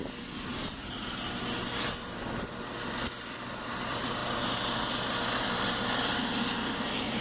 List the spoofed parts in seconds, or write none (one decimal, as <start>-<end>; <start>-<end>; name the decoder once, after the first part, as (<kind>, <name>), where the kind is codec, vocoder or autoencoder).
3.2-4.2 (vocoder, BigVGAN v2); 5.1-7.2

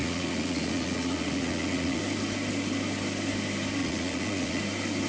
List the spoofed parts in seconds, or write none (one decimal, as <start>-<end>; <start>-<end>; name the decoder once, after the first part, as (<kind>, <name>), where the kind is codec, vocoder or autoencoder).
0.0-2.0 (vocoder, Vocos); 3.8-4.6

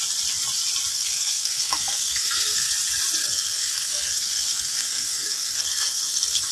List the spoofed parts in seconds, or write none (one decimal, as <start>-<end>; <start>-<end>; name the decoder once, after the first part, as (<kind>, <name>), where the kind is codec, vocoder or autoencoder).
0.9-2.7 (codec, SNAC); 3.2-6.5

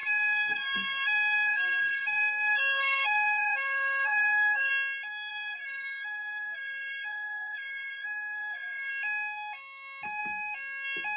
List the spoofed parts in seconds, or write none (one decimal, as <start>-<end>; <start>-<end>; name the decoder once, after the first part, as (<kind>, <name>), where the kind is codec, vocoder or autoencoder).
0.0-4.7 (codec, SNAC); 5.3-8.9